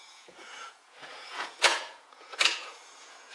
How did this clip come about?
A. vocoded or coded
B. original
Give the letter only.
A